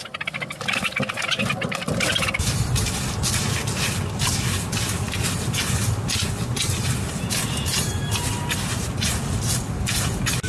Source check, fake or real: real